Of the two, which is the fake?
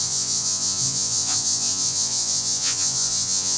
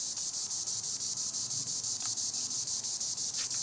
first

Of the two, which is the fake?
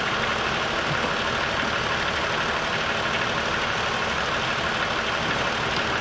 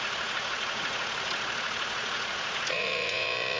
second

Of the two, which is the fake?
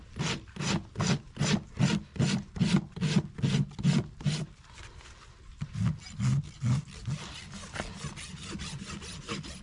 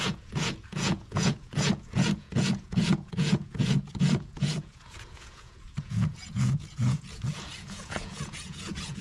second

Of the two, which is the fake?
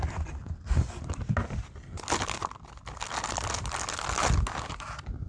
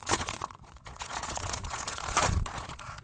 second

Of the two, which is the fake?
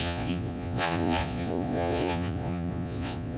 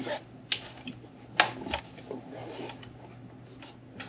first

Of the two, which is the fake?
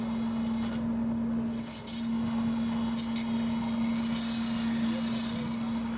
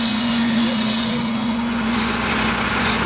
second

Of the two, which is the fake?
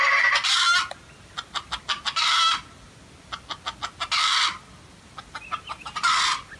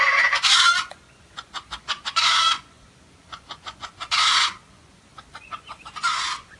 second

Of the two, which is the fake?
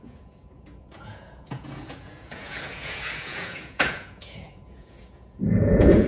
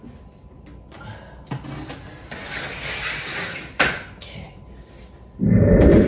first